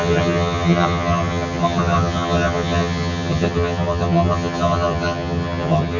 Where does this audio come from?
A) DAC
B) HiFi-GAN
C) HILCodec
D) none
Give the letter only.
B